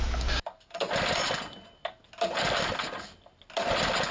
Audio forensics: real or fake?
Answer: real